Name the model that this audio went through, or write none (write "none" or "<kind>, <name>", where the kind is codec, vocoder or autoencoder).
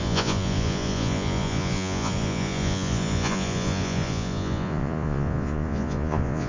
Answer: vocoder, Vocos